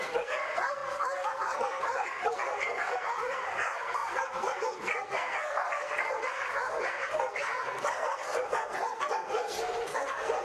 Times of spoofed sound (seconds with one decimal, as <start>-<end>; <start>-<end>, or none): 0.0-10.4